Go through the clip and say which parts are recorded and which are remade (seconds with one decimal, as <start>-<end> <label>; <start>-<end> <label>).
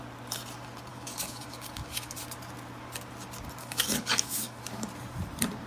0.0-0.9 recorded; 0.9-2.2 remade; 2.2-3.6 recorded; 3.6-4.6 remade; 4.6-5.7 recorded